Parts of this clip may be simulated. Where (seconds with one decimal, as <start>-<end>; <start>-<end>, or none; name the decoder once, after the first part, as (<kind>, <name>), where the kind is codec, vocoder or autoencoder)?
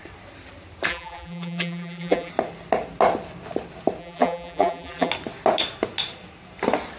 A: 0.9-2.3 (vocoder, BigVGAN v2); 4.0-5.1